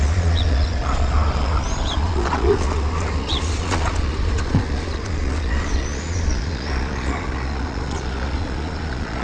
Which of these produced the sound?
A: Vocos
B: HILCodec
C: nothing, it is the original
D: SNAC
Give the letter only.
A